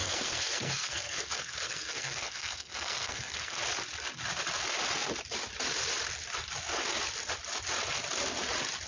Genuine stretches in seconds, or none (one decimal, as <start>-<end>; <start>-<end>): 3.6-8.9